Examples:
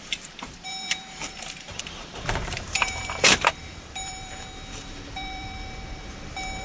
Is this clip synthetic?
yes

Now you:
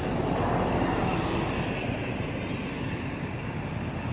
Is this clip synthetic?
no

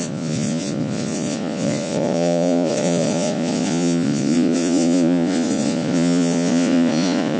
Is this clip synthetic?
yes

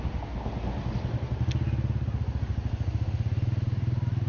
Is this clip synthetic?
no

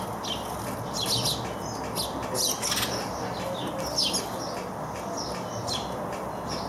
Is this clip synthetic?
no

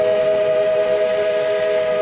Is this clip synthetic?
no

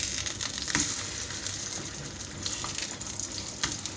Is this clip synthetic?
no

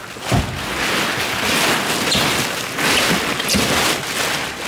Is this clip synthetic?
no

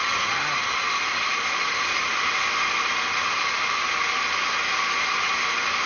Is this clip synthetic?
no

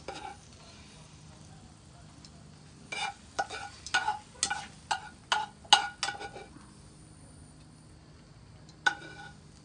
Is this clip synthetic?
no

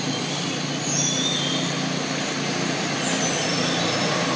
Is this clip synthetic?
no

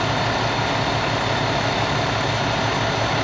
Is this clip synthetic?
no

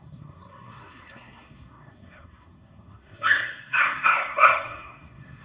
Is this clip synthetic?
yes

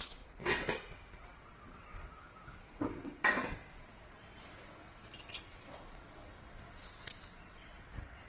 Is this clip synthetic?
yes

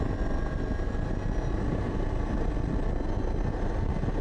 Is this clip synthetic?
no